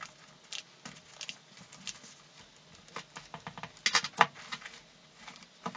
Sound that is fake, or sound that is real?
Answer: real